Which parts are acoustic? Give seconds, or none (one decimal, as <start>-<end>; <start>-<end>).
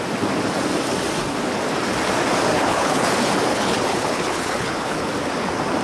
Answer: 0.0-2.5; 3.1-3.5; 5.1-5.8